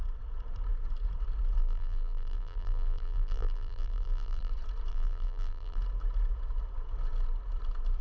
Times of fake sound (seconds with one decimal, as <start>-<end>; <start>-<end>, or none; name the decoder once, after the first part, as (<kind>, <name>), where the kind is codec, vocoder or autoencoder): 1.6-4.5 (vocoder, BigVGAN v2); 4.9-5.8